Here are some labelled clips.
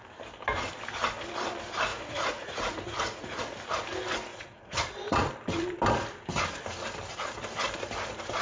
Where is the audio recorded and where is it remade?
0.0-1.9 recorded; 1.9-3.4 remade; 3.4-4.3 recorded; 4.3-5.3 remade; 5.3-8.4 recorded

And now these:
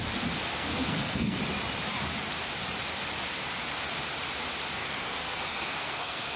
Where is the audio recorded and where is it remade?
0.0-0.5 recorded; 0.5-1.4 remade; 1.4-4.8 recorded; 4.8-6.4 remade

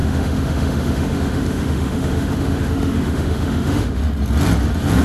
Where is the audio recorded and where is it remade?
0.0-4.0 remade; 4.0-5.0 recorded

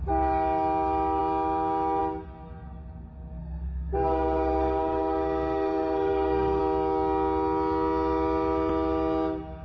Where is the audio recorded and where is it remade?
0.0-3.4 recorded; 3.4-6.6 remade; 6.6-9.6 recorded

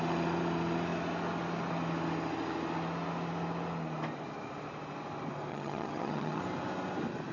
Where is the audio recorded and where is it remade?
0.0-5.5 recorded; 5.5-6.4 remade; 6.4-7.3 recorded

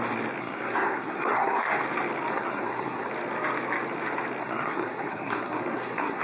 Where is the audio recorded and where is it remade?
0.0-0.4 recorded; 0.4-1.7 remade; 1.7-2.3 recorded; 2.3-3.1 remade; 3.1-4.4 recorded; 4.4-6.2 remade

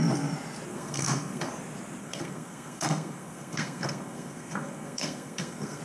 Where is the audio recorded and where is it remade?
0.0-0.7 recorded; 0.7-1.5 remade; 1.5-2.0 recorded; 2.0-5.8 remade